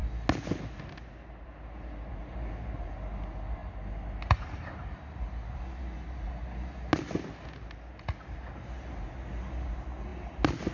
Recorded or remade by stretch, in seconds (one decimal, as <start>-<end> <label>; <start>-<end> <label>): 0.0-10.7 recorded